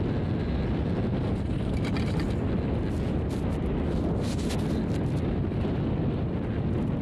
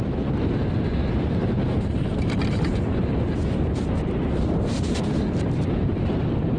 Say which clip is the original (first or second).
first